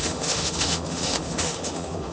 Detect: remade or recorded remade